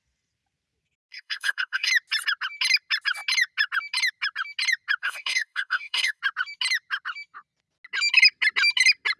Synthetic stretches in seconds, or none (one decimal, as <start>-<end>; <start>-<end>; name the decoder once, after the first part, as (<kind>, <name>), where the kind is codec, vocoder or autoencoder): 1.1-1.9 (codec, DAC); 5.0-6.2